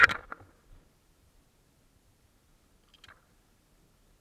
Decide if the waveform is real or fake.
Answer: real